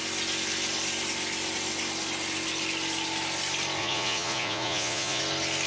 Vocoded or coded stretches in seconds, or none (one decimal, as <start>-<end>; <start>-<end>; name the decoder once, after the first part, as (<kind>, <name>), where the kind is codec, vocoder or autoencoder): 3.8-5.2 (vocoder, Vocos)